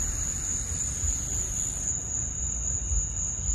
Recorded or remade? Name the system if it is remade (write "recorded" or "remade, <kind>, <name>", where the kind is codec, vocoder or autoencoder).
recorded